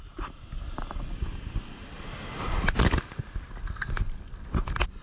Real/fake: real